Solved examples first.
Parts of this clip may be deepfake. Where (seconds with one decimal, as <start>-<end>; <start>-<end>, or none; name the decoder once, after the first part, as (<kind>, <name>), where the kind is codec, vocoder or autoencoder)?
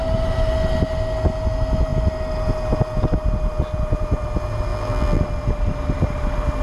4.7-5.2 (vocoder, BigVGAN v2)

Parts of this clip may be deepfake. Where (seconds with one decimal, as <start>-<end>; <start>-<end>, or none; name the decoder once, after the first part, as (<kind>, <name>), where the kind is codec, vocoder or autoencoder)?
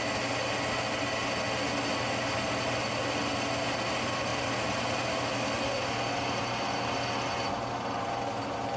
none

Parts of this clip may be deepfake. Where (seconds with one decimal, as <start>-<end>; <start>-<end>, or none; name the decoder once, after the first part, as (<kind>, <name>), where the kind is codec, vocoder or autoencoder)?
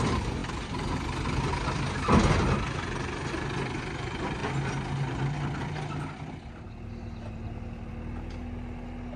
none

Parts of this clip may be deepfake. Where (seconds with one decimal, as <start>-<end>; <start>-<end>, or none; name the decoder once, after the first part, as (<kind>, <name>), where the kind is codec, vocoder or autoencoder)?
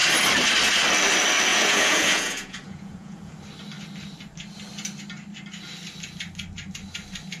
1.5-3.3 (vocoder, Vocos)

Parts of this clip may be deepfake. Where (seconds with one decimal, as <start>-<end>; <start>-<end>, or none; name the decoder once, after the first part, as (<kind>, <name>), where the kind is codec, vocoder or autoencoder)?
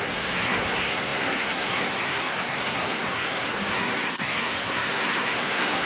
0.0-5.9 (codec, SNAC)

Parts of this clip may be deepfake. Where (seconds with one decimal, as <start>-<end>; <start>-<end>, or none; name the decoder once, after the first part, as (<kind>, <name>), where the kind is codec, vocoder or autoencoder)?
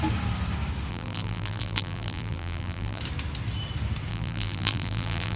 0.9-3.0 (vocoder, BigVGAN v2); 4.1-5.4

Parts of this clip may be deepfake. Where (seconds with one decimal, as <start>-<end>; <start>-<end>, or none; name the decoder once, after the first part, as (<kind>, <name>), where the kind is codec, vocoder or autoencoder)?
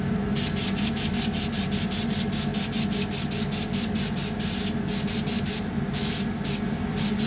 none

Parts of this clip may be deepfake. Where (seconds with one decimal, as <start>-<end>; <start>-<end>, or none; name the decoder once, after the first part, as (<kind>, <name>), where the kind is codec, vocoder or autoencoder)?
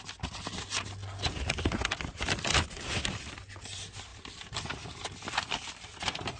none